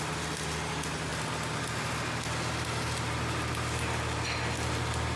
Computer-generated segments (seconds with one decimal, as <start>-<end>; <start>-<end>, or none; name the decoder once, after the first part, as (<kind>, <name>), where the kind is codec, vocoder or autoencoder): none

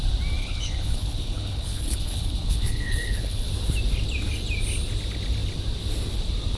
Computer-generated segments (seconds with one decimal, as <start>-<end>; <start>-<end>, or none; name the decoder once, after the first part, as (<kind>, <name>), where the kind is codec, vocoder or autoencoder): 0.4-3.5 (codec, HILCodec)

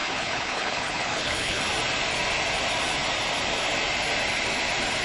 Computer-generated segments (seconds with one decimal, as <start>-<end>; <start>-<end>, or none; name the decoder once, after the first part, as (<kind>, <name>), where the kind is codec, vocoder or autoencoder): 0.0-1.6 (codec, HILCodec)

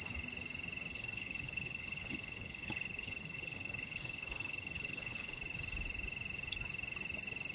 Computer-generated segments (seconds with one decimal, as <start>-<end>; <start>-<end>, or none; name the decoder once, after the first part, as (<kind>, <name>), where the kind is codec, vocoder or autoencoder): 0.9-5.4 (codec, HILCodec)

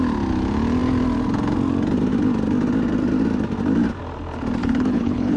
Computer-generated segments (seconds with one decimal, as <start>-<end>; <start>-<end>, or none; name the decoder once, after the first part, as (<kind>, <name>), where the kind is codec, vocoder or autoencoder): 4.6-5.4 (codec, HILCodec)

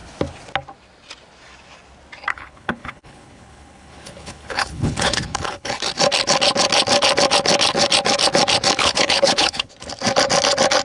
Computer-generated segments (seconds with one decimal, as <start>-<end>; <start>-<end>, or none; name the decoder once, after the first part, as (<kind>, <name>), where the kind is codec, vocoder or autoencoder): 2.3-5.7 (codec, HILCodec); 8.8-9.7

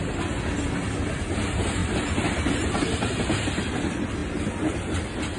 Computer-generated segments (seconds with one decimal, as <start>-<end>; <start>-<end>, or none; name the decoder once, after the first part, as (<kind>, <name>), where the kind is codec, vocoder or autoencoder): none

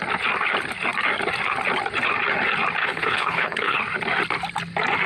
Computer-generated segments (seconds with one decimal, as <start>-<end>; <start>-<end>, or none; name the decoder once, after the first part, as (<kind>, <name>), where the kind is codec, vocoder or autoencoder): 2.8-3.8 (codec, HILCodec)